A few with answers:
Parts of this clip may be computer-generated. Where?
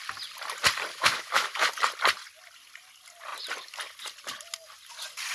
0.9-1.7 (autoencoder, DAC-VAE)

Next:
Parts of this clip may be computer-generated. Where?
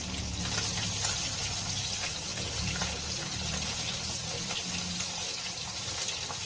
none